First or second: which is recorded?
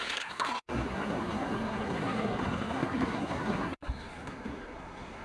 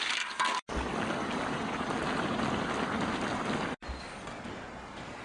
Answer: second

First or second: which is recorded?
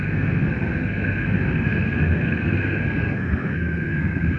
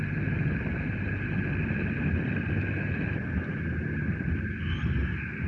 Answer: second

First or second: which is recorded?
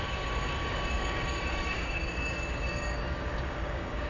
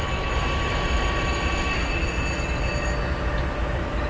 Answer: second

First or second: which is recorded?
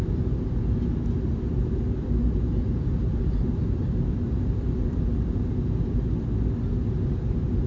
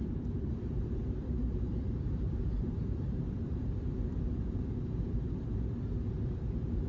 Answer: first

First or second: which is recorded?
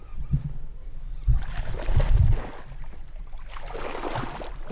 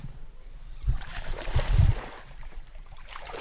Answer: first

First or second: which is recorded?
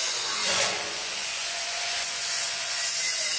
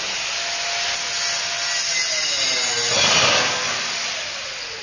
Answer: second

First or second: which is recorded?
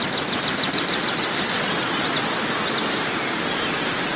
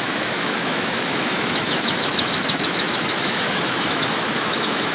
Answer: first